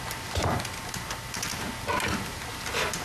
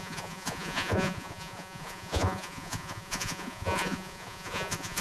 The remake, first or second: second